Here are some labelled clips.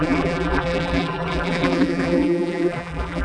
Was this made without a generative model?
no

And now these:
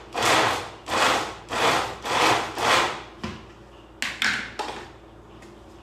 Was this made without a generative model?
yes